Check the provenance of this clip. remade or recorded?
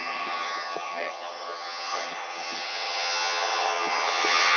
remade